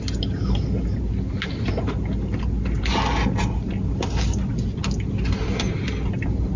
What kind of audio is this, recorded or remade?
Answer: recorded